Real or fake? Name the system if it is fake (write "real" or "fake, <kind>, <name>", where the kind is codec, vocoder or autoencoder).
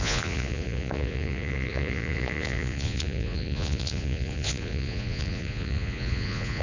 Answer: fake, vocoder, Vocos